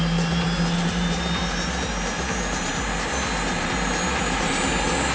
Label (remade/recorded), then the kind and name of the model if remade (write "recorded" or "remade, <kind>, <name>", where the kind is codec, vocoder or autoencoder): recorded